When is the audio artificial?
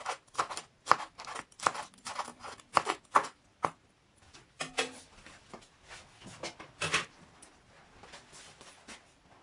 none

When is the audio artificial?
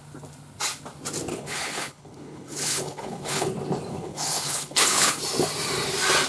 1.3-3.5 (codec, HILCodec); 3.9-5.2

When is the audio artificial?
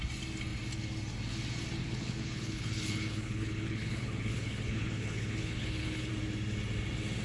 1.8-6.1 (codec, HILCodec)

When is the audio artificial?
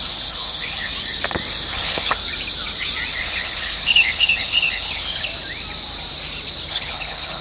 0.0-0.9 (codec, HILCodec); 1.7-2.2; 3.1-5.3; 6.7-7.4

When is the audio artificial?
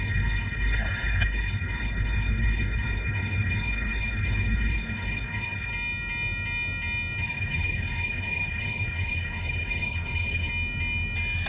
0.0-5.7 (codec, HILCodec); 7.2-10.5